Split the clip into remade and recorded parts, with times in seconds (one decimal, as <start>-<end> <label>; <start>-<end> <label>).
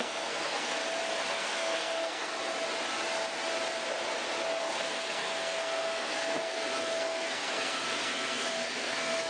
0.0-0.8 remade; 0.8-1.3 recorded; 1.3-2.3 remade; 2.3-4.6 recorded; 4.6-9.3 remade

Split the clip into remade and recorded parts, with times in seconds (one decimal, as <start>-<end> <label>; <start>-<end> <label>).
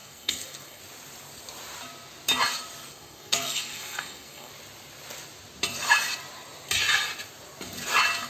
0.0-0.8 remade; 0.8-2.8 recorded; 2.8-4.5 remade; 4.5-8.3 recorded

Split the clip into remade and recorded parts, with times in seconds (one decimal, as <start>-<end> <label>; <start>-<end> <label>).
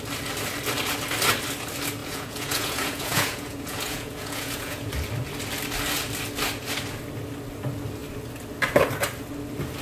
0.0-2.0 recorded; 2.0-4.9 remade; 4.9-9.8 recorded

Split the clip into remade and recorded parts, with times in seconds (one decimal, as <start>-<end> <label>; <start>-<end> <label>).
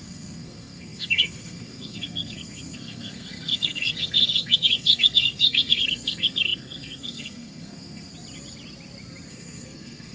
0.0-8.1 remade; 8.1-9.3 recorded; 9.3-10.1 remade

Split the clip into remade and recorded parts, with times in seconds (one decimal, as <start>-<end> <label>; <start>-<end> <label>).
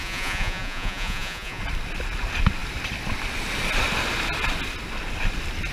0.0-1.6 remade; 1.6-5.7 recorded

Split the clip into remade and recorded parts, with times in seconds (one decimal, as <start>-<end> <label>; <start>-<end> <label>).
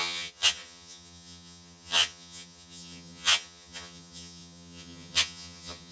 0.0-5.9 remade